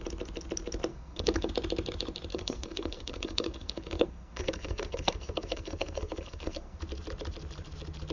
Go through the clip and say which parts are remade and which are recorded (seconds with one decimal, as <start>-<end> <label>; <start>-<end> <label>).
0.0-0.9 recorded; 0.9-1.5 remade; 1.5-2.3 recorded; 2.3-6.8 remade; 6.8-8.1 recorded